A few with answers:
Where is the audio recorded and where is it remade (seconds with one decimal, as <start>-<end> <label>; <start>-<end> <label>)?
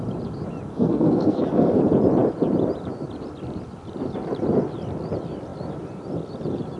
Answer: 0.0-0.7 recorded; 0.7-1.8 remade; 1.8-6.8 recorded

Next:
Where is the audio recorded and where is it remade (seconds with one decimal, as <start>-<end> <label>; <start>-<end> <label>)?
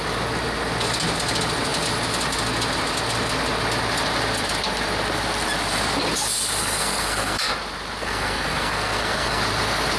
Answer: 0.0-6.6 recorded; 6.6-7.5 remade; 7.5-8.0 recorded; 8.0-9.4 remade; 9.4-10.0 recorded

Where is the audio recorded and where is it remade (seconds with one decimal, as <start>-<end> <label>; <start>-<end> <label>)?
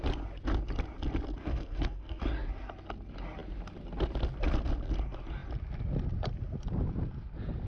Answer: 0.0-1.4 recorded; 1.4-2.2 remade; 2.2-7.7 recorded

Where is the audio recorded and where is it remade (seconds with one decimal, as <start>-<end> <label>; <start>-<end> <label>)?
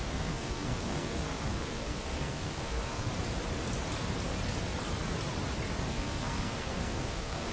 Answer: 0.0-3.1 remade; 3.1-5.9 recorded; 5.9-7.5 remade